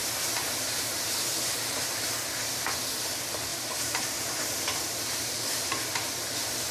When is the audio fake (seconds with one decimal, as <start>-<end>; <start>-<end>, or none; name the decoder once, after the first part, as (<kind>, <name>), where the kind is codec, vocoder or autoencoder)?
0.0-1.1 (vocoder, BigVGAN v2); 3.5-6.7